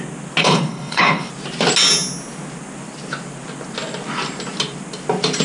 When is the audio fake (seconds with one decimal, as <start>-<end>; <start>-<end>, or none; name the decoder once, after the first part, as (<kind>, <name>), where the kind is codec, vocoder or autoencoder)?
0.4-1.3 (codec, HILCodec)